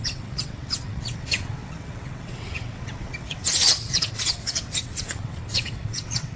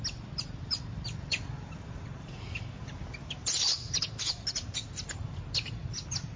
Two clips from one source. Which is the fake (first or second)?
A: first